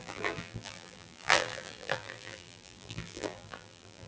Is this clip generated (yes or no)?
yes